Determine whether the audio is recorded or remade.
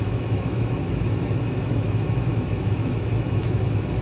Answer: remade